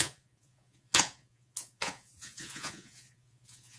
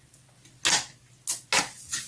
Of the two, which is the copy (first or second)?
first